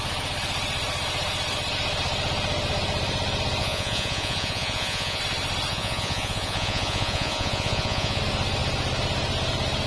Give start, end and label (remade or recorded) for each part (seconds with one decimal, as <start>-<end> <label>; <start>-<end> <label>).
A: 0.0-3.6 recorded; 3.6-5.2 remade; 5.2-5.7 recorded; 5.7-8.2 remade; 8.2-9.9 recorded